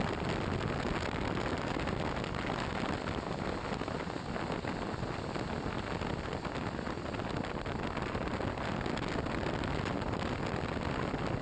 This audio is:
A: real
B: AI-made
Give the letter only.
A